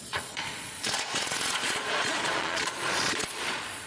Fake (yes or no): yes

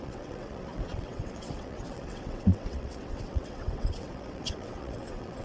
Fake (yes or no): yes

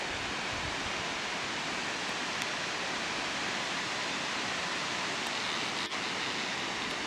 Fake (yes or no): no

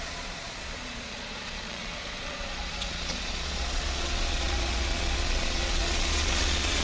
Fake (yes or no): yes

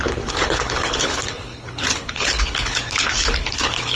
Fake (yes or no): yes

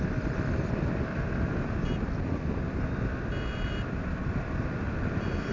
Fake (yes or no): yes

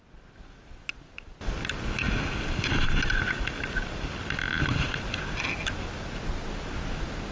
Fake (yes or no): no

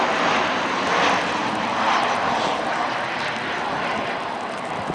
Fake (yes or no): yes